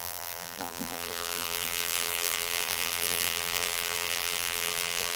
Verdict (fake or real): fake